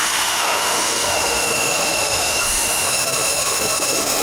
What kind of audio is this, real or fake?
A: fake